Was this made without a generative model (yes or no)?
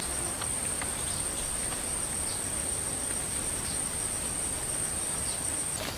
yes